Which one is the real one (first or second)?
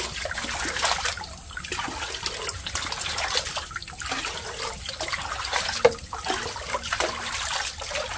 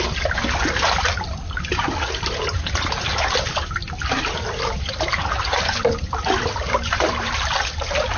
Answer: first